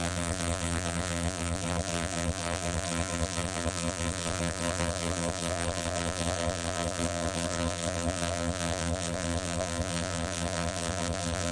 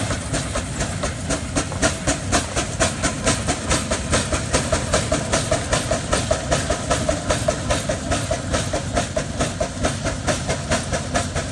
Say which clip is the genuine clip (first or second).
second